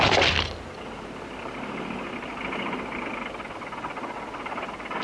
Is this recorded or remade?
recorded